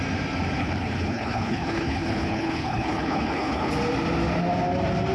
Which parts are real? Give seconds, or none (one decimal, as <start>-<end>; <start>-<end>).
0.0-0.6; 3.7-5.1